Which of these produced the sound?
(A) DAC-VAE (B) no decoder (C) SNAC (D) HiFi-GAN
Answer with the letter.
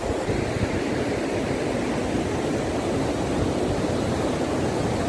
B